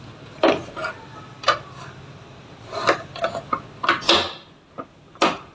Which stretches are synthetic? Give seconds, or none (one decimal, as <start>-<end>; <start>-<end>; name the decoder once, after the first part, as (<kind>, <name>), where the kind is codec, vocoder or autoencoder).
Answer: 1.1-3.2 (vocoder, BigVGAN v2)